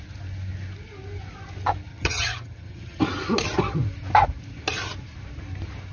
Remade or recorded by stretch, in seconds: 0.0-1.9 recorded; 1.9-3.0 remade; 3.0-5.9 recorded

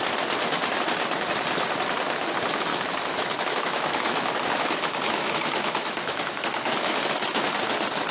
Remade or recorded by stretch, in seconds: 0.0-2.7 recorded; 2.7-7.6 remade; 7.6-8.1 recorded